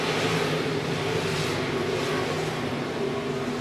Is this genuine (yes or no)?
yes